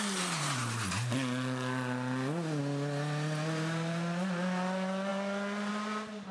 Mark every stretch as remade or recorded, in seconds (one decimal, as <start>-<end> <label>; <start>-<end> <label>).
0.0-6.3 recorded